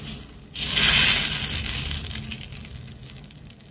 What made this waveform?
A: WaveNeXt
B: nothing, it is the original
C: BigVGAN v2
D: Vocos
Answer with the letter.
B